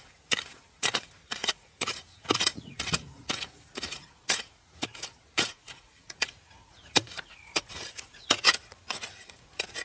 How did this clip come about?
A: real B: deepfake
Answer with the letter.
B